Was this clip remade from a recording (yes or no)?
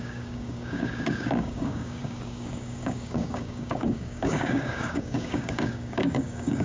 yes